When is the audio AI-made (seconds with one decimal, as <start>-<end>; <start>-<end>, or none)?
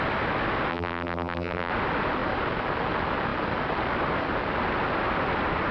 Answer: 0.7-1.7